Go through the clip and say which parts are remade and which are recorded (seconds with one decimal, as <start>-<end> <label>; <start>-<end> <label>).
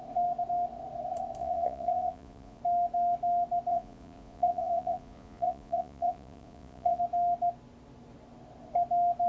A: 0.0-1.4 recorded; 1.4-2.6 remade; 2.6-3.7 recorded; 3.7-7.0 remade; 7.0-9.3 recorded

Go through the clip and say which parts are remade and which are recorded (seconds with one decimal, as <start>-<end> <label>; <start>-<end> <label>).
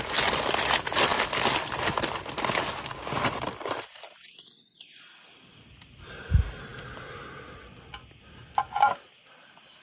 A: 0.0-9.8 recorded